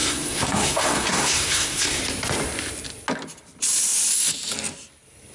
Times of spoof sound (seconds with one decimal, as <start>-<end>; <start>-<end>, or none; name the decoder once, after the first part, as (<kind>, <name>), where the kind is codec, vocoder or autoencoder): 0.0-2.0 (codec, SNAC)